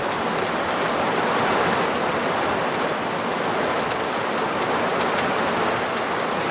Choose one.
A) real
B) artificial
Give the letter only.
A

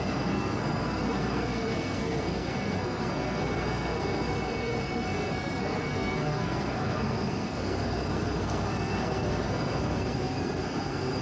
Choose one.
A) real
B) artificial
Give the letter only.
B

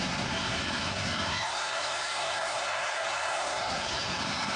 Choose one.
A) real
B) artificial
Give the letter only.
B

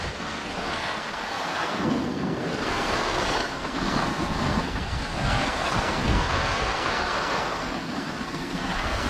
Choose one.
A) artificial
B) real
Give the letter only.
A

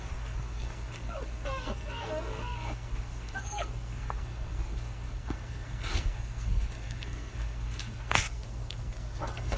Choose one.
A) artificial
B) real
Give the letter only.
A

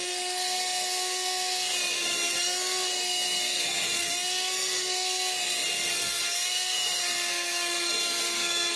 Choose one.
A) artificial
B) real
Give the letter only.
A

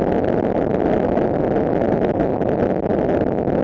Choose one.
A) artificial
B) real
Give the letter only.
B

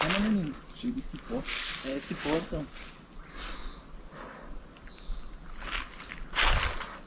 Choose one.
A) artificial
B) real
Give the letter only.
B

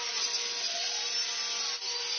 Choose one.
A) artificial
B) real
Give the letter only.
B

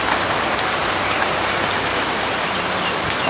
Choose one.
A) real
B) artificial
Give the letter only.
A